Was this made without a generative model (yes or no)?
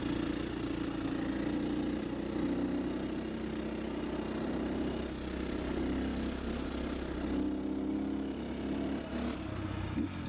yes